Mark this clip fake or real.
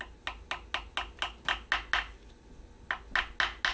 real